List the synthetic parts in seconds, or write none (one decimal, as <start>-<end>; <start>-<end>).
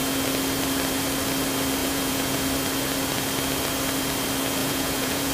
1.8-2.4; 4.6-5.3